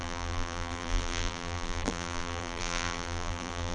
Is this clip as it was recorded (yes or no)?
no